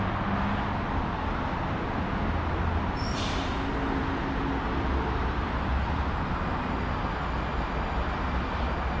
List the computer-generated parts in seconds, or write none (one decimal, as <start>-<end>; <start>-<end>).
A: none